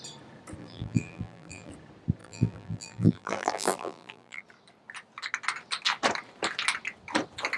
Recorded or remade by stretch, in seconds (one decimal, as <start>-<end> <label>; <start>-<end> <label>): 0.0-0.6 recorded; 0.6-1.7 remade; 1.7-2.2 recorded; 2.2-4.4 remade; 4.4-7.6 recorded